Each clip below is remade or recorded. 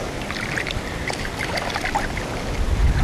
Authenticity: recorded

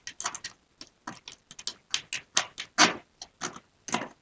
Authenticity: recorded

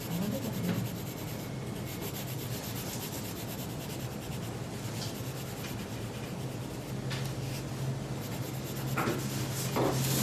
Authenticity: recorded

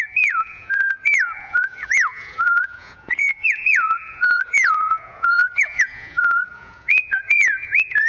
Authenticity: remade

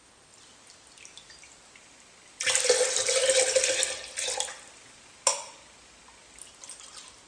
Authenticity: recorded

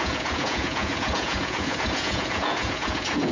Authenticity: remade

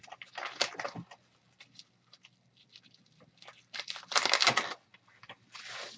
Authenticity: recorded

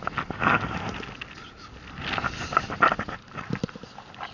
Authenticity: recorded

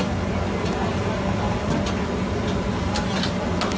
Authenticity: recorded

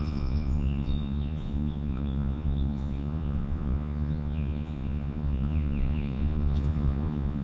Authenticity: remade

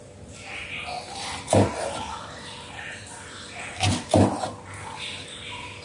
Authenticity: recorded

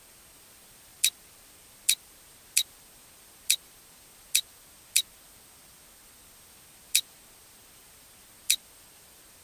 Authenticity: recorded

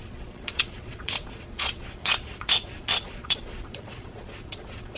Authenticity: remade